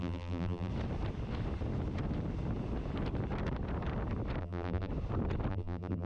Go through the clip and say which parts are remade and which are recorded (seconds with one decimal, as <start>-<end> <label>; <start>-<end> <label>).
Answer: 0.0-0.7 remade; 0.7-4.4 recorded; 4.4-4.9 remade; 4.9-5.5 recorded; 5.5-6.1 remade